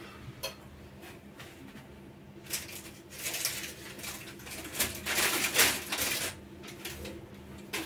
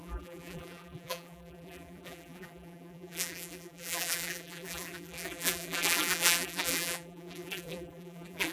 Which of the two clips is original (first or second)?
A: first